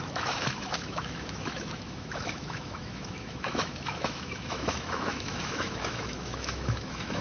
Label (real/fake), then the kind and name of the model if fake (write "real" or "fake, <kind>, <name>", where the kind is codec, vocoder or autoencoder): fake, autoencoder, DAC-VAE